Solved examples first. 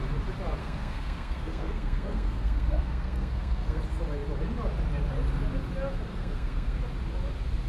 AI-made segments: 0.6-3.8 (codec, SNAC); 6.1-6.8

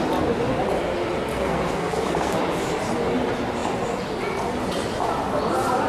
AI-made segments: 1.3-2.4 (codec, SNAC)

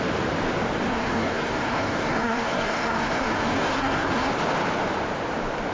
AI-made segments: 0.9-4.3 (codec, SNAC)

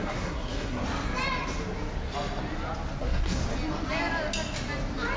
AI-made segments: 0.0-0.8 (codec, SNAC); 3.0-3.4

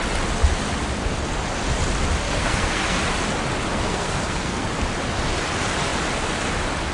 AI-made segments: 2.2-3.0 (codec, SNAC); 3.7-4.7

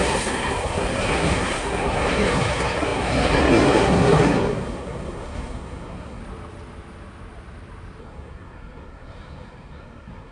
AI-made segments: 0.0-6.2 (codec, SNAC); 8.0-10.3